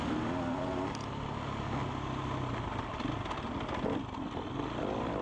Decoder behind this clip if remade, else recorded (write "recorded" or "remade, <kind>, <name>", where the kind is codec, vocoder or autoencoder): recorded